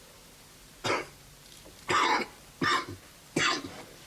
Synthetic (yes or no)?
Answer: no